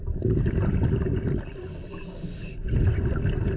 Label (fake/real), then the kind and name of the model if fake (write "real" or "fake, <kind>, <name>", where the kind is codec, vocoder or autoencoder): real